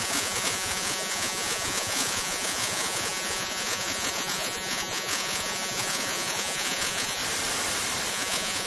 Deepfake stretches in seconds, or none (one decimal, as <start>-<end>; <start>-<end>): 0.0-7.2; 8.1-8.7